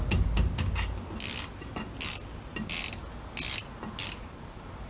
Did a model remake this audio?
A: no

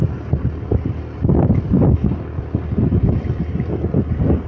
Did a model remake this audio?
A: no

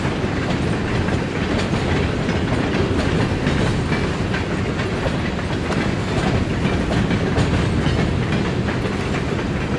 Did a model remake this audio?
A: no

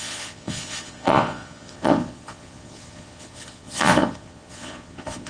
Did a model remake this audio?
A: yes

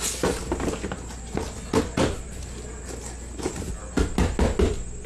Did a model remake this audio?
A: no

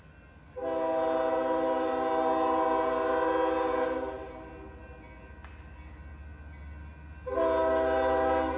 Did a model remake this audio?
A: no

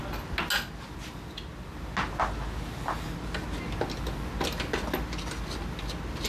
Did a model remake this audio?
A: no